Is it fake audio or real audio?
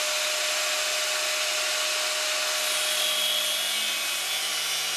real